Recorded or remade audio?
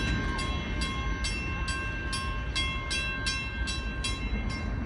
recorded